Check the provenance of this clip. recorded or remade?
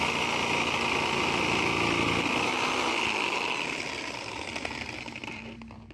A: recorded